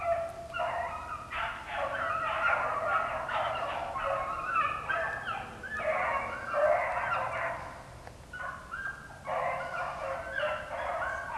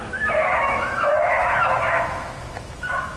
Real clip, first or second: first